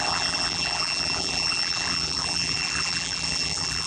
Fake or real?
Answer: fake